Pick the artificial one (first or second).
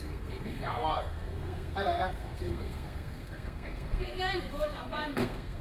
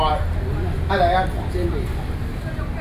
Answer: first